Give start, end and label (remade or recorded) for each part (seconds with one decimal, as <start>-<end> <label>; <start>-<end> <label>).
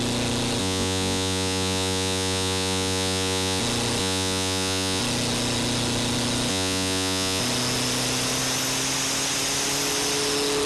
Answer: 0.0-0.6 recorded; 0.6-3.6 remade; 3.6-4.0 recorded; 4.0-5.0 remade; 5.0-6.5 recorded; 6.5-7.4 remade; 7.4-10.7 recorded